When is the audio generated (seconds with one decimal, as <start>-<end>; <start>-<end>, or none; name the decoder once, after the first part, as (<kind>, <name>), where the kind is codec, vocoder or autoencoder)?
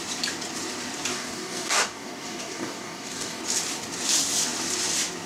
1.1-3.4 (codec, DAC)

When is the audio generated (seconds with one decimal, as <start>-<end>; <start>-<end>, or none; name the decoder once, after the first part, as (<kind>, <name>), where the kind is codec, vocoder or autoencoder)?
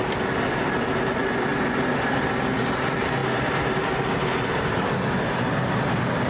none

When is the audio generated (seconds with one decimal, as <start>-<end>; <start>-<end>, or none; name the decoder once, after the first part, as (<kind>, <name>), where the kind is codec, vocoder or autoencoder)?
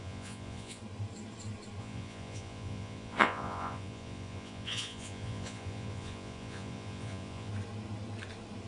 0.0-0.8 (vocoder, Vocos); 1.8-7.5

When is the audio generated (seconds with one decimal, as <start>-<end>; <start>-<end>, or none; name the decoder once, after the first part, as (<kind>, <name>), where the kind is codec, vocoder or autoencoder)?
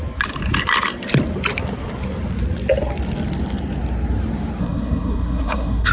4.6-5.9 (codec, SNAC)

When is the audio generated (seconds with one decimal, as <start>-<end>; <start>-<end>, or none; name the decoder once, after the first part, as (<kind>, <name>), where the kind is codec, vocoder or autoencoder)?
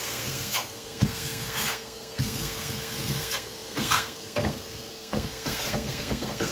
0.0-6.5 (codec, SNAC)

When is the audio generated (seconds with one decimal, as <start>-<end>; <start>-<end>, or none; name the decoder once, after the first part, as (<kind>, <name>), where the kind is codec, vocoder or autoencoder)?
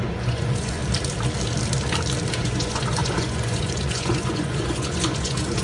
0.0-0.8 (vocoder, Vocos); 2.3-5.6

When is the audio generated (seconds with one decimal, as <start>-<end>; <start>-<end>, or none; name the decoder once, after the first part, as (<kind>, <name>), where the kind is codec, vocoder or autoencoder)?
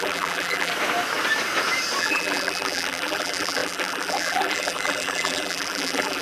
0.0-0.7 (vocoder, BigVGAN v2); 2.0-6.2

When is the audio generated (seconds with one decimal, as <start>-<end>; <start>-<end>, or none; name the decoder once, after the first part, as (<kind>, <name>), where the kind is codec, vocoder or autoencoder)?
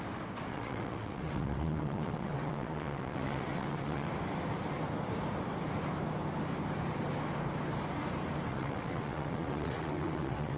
0.5-4.1 (vocoder, WaveNeXt); 8.5-10.6